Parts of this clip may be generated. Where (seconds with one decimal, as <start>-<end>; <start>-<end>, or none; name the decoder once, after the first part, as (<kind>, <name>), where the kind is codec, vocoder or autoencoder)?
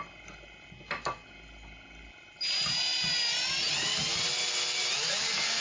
none